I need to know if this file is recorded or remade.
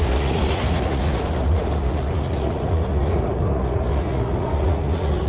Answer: remade